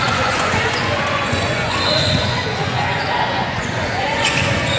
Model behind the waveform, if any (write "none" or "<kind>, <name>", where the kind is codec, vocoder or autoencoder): vocoder, Vocos